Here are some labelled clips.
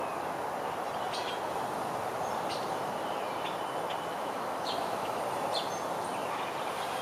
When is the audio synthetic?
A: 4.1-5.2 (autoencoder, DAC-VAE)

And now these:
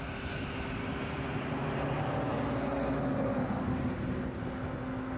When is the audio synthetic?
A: none

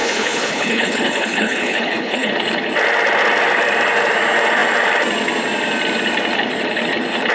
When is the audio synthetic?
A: 0.0-2.3 (codec, HILCodec)

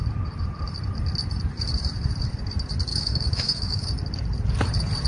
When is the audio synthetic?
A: 2.9-3.9 (autoencoder, DAC-VAE)

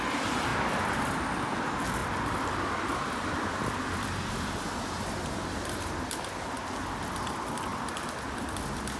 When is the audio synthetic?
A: 0.5-1.5 (vocoder, BigVGAN v2); 2.0-4.3